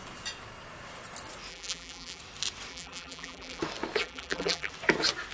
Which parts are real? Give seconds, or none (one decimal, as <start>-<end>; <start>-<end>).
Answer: 0.0-1.5; 2.2-2.7; 3.6-4.0; 4.7-5.3